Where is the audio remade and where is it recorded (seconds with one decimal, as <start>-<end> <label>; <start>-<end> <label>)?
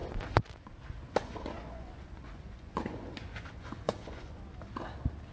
0.0-0.5 remade; 0.5-1.2 recorded; 1.2-4.4 remade; 4.4-5.3 recorded